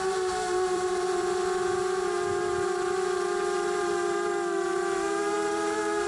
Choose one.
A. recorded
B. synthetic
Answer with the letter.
B